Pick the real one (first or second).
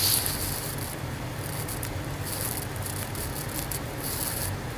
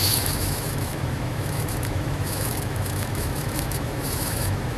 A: first